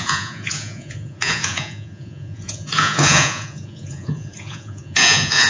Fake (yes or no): yes